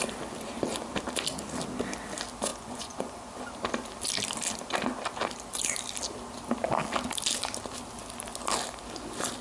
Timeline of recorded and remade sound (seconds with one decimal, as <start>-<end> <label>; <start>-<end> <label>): 0.0-2.5 recorded; 2.5-3.3 remade; 3.3-9.4 recorded